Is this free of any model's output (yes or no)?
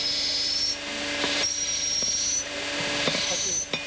yes